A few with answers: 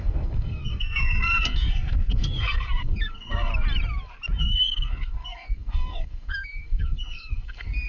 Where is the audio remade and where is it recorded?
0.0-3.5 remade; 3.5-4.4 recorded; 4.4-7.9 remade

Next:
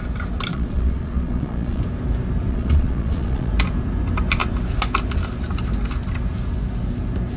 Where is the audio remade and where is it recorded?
0.0-0.5 recorded; 0.5-1.8 remade; 1.8-2.5 recorded; 2.5-3.5 remade; 3.5-7.4 recorded

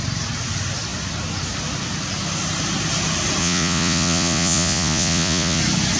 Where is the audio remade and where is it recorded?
0.0-3.4 recorded; 3.4-5.6 remade; 5.6-6.0 recorded

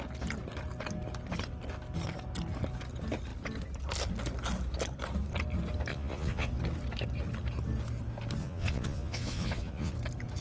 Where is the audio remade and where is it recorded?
0.0-5.9 recorded; 5.9-6.5 remade; 6.5-8.4 recorded; 8.4-9.9 remade; 9.9-10.4 recorded